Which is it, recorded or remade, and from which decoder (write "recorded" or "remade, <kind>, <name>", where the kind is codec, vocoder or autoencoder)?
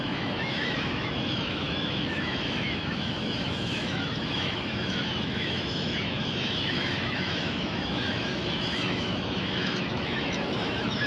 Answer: remade, autoencoder, DAC-VAE